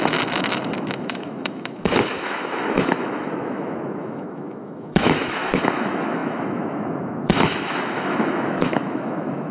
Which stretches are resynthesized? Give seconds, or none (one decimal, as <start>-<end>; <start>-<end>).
0.0-9.5